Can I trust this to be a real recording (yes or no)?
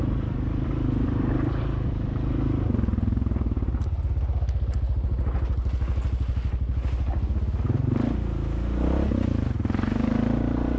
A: yes